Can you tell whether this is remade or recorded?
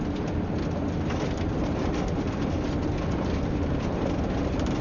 recorded